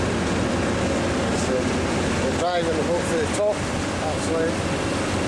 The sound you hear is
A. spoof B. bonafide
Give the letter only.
B